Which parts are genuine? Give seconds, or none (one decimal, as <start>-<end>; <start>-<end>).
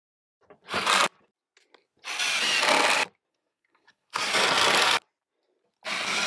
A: 0.0-3.3; 4.3-6.3